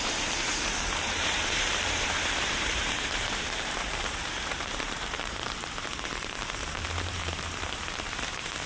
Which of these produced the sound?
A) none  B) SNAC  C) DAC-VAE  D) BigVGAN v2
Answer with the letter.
D